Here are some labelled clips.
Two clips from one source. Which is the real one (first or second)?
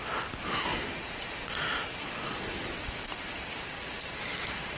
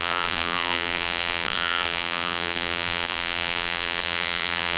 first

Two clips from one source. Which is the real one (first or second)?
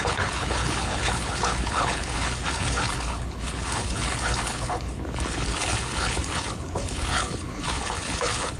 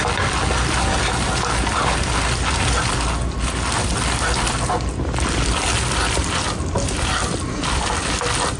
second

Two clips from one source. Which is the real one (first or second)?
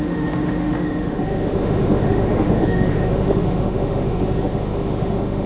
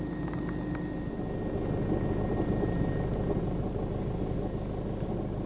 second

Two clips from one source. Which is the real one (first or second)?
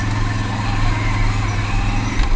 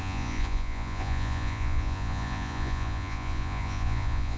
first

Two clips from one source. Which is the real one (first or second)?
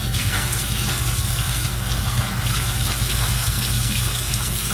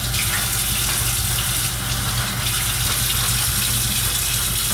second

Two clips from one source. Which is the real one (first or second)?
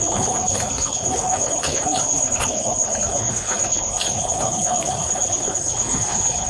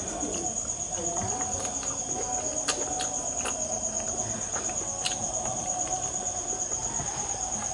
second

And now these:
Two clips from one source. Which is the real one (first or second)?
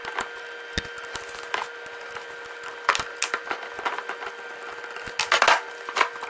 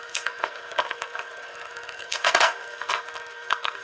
first